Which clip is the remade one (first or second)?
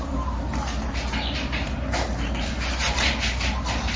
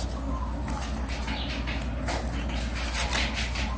first